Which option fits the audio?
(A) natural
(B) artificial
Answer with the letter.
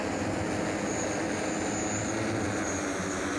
A